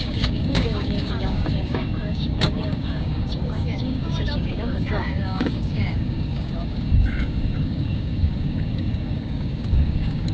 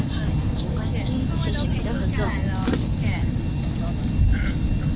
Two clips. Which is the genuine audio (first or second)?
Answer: second